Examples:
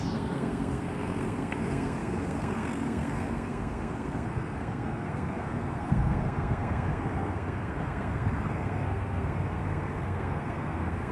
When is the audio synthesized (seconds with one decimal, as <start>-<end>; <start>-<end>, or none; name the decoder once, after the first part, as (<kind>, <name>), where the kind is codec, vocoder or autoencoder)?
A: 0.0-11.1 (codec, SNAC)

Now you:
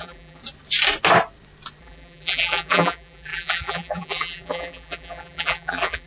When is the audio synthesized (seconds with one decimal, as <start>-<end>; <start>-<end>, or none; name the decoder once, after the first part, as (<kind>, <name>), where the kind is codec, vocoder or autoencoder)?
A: 0.0-0.4 (vocoder, BigVGAN v2); 1.8-6.1

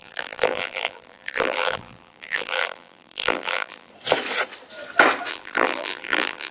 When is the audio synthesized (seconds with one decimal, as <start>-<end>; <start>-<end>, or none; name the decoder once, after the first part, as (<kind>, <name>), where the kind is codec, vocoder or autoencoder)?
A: 0.0-3.9 (vocoder, BigVGAN v2); 5.3-6.5